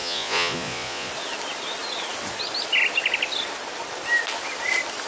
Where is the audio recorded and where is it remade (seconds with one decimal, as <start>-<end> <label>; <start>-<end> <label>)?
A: 0.0-1.1 remade; 1.1-5.1 recorded